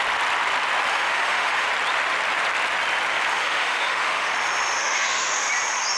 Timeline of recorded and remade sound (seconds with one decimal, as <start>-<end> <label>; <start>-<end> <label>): 0.0-0.9 recorded; 0.9-1.7 remade; 1.7-3.3 recorded; 3.3-4.3 remade; 4.3-4.8 recorded; 4.8-5.5 remade; 5.5-6.0 recorded